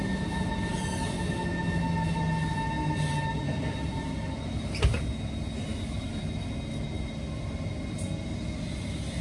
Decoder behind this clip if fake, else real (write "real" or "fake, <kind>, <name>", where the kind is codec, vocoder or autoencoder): real